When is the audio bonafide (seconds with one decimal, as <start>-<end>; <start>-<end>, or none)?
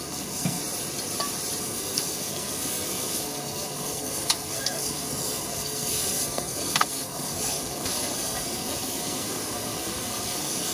0.6-1.6